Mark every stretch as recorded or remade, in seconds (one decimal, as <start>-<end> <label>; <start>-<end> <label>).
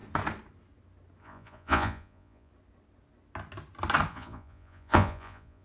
0.0-1.2 recorded; 1.2-2.5 remade; 2.5-4.1 recorded; 4.1-5.6 remade